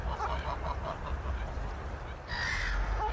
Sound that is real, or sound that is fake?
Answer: real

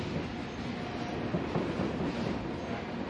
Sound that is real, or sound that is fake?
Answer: real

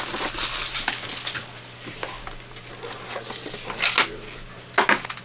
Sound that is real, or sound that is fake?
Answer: real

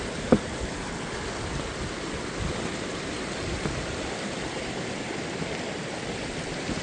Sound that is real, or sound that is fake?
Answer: fake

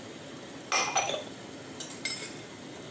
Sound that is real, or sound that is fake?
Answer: real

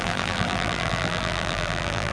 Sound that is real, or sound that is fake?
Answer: fake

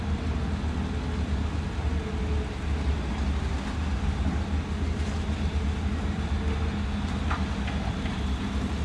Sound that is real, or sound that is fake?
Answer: real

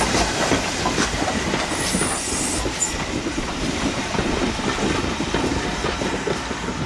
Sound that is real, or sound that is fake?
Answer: fake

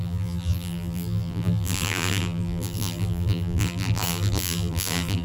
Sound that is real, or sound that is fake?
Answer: fake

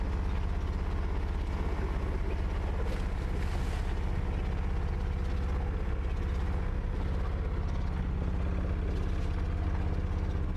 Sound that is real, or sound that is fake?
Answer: real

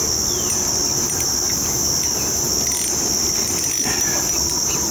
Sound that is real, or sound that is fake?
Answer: real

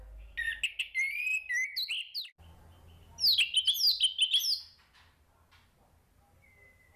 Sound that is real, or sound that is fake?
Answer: real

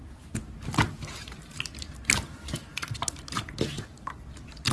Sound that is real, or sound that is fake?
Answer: fake